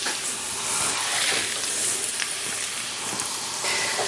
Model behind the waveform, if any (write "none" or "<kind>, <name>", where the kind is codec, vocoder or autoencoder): none